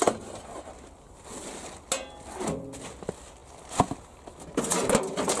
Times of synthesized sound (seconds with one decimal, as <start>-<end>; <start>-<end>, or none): none